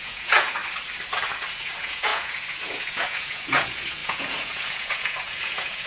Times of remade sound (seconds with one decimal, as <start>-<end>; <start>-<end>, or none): 0.0-0.6; 1.5-5.9